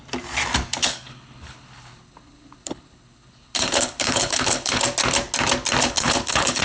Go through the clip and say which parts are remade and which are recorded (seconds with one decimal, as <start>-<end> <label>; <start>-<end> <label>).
0.0-0.8 recorded; 0.8-4.8 remade; 4.8-5.8 recorded; 5.8-6.6 remade

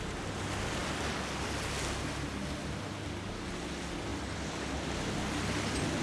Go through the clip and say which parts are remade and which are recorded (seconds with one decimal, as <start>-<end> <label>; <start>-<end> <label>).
0.0-6.0 recorded

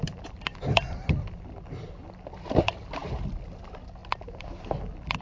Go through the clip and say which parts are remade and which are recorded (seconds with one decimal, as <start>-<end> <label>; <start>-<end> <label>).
0.0-0.5 recorded; 0.5-1.1 remade; 1.1-4.0 recorded; 4.0-4.6 remade; 4.6-5.2 recorded

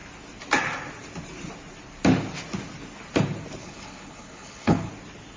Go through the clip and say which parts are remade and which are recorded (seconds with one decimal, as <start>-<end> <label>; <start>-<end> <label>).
0.0-3.6 recorded; 3.6-4.9 remade; 4.9-5.4 recorded

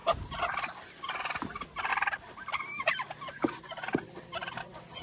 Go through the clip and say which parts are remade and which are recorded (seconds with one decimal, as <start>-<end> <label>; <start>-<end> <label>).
0.0-1.9 recorded; 1.9-4.6 remade; 4.6-5.0 recorded

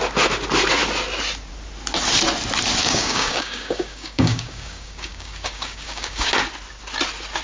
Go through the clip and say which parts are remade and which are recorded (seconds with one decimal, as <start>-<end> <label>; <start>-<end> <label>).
0.0-2.8 recorded; 2.8-6.3 remade; 6.3-7.4 recorded

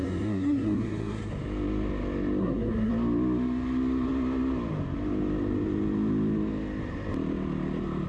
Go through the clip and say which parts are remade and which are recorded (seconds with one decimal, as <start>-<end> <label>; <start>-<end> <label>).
0.0-1.3 remade; 1.3-2.4 recorded; 2.4-2.9 remade; 2.9-8.1 recorded

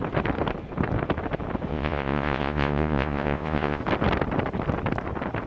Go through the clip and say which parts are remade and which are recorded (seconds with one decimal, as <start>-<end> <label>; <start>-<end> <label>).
0.0-1.7 recorded; 1.7-3.8 remade; 3.8-5.5 recorded